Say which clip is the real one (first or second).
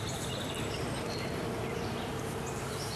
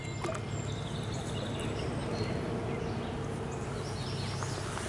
second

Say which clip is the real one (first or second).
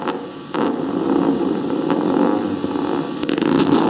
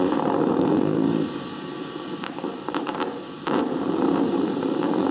first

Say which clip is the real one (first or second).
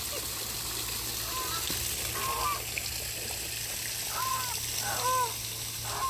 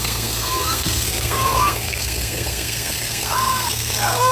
first